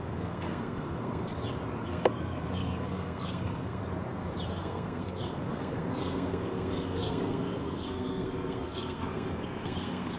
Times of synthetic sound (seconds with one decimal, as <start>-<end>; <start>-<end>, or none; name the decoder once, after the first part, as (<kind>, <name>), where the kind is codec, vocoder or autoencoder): 0.0-1.3 (codec, SNAC); 1.8-3.8; 4.5-10.2